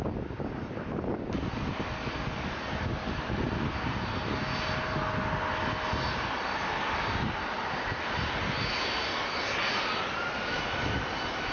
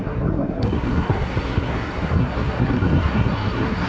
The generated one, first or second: second